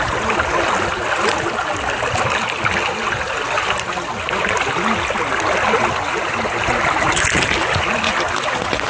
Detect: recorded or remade recorded